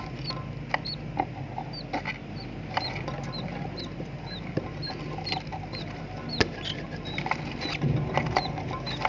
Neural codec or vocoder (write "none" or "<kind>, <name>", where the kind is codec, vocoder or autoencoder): none